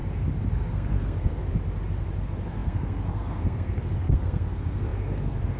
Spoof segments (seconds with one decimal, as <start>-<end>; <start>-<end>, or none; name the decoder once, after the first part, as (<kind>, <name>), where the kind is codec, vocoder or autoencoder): 0.5-1.4 (codec, SNAC); 2.2-5.6

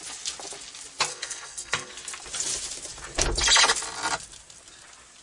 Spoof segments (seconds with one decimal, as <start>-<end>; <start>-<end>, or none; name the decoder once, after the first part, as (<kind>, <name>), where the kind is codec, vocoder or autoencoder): 1.1-1.9 (codec, SNAC)